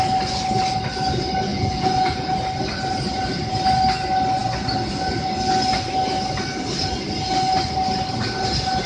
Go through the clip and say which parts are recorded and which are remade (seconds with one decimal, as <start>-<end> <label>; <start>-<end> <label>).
0.0-1.5 recorded; 1.5-2.3 remade; 2.3-8.9 recorded